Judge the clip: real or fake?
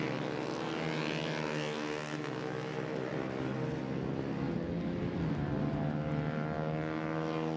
real